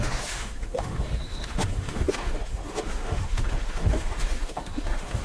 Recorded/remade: remade